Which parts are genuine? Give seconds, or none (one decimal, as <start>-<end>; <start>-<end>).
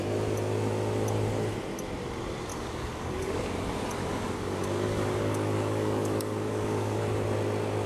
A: 0.0-2.5; 3.4-4.0; 7.0-7.9